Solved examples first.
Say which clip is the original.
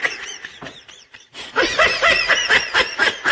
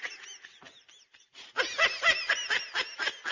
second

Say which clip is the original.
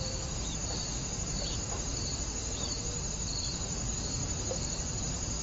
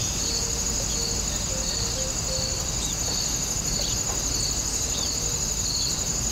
second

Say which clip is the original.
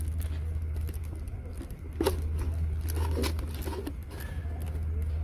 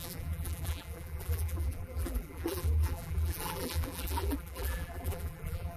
first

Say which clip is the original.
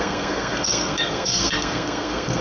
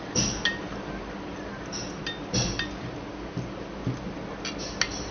second